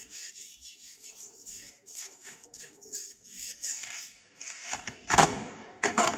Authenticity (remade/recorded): remade